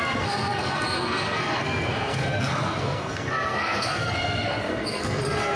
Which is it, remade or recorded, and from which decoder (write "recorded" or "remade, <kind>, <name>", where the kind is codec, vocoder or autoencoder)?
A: remade, codec, SNAC